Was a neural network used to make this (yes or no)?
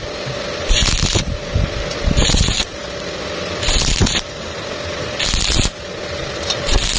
no